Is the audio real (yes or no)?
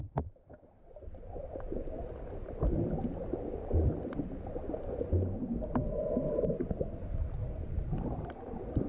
yes